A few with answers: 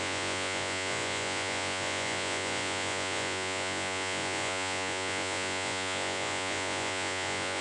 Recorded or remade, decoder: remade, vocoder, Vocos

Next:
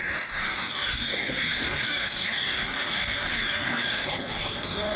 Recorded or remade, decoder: remade, codec, DAC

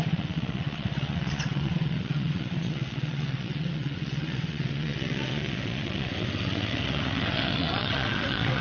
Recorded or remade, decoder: remade, vocoder, WaveNeXt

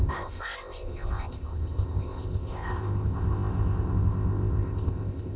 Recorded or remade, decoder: remade, codec, ZipCodec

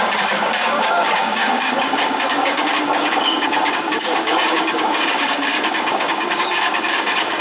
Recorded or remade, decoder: remade, codec, DAC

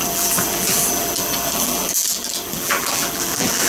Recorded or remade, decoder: remade, vocoder, BigVGAN v2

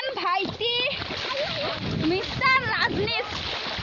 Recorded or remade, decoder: recorded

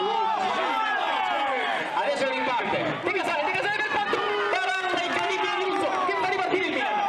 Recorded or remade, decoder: recorded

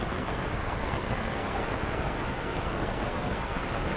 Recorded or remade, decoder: remade, codec, SNAC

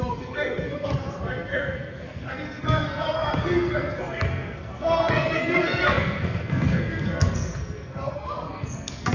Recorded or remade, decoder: remade, codec, SNAC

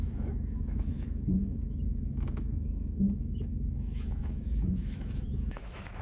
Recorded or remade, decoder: remade, autoencoder, DAC-VAE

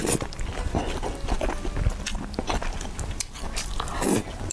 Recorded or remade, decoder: recorded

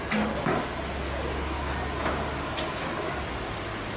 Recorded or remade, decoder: recorded